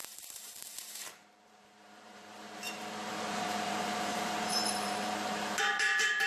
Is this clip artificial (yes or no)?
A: yes